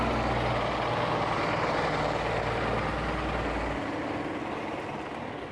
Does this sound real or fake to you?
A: real